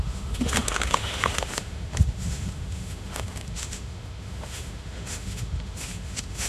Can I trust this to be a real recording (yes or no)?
no